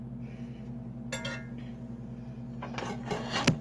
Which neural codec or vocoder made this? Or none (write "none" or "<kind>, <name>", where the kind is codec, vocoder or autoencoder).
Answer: none